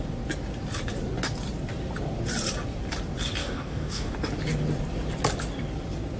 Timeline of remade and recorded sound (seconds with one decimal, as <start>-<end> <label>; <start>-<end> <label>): 0.0-3.4 recorded; 3.4-4.1 remade; 4.1-6.2 recorded